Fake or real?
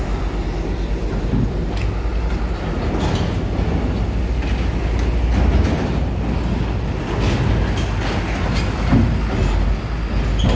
real